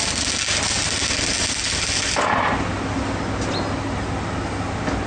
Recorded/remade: recorded